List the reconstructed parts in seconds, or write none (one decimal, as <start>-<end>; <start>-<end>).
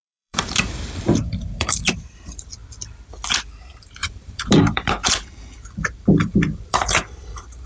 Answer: 0.0-2.6; 3.6-7.7